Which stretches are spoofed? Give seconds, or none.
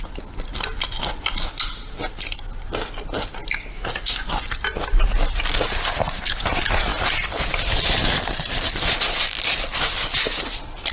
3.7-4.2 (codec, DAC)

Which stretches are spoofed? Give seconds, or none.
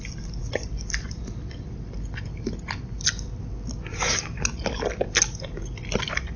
none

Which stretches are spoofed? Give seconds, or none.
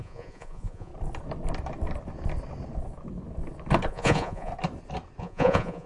0.0-0.9 (vocoder, Vocos); 3.9-4.5; 5.2-5.9